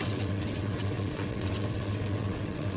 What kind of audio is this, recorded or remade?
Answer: remade